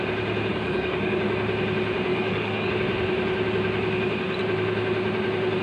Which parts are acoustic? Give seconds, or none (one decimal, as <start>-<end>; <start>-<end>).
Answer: 0.0-0.5; 1.2-2.1; 2.7-5.6